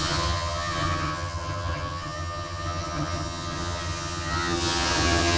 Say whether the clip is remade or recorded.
remade